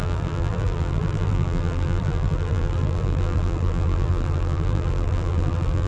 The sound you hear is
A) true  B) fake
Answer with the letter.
B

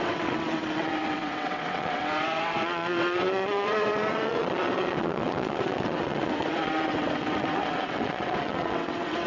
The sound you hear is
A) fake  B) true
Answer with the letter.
A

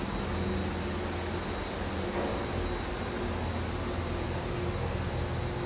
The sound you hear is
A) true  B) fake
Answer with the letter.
A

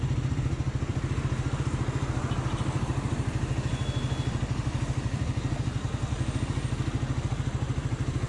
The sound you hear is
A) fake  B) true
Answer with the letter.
B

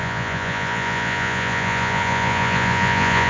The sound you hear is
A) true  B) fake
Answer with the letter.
B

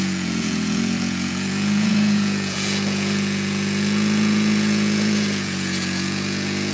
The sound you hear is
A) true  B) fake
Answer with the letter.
B